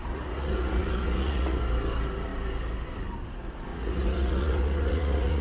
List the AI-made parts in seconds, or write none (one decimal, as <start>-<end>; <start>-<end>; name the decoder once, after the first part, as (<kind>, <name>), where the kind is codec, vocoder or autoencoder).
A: 0.0-1.6 (vocoder, Vocos); 3.7-5.4